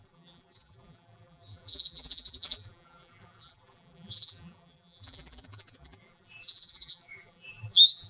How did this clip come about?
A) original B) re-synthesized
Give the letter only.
B